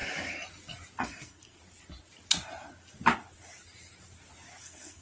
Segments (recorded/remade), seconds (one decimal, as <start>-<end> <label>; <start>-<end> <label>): 0.0-1.0 recorded; 1.0-1.6 remade; 1.6-4.6 recorded; 4.6-5.0 remade